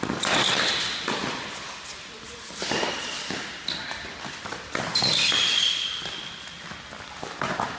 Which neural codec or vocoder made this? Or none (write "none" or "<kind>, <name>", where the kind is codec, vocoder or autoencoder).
none